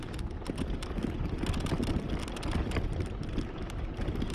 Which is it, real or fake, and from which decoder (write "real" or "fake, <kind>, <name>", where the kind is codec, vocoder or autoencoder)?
real